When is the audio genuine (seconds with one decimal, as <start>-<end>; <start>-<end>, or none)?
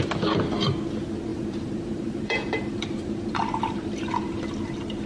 0.0-1.3; 4.4-5.1